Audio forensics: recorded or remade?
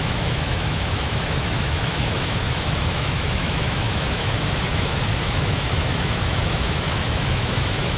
remade